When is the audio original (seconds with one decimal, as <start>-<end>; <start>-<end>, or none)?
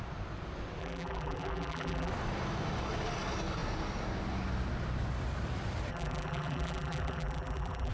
0.0-0.8; 2.1-5.9